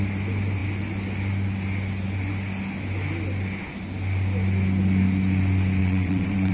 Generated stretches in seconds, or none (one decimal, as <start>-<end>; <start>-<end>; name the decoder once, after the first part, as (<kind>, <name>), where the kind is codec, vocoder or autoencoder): 5.8-6.5 (vocoder, WaveNeXt)